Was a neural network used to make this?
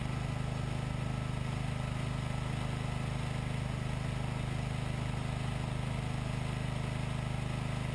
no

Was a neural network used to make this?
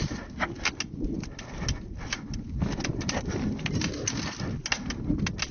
no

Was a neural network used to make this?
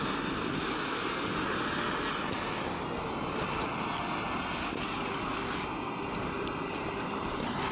no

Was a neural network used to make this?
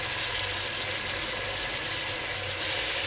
no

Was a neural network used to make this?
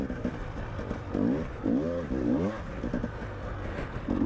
no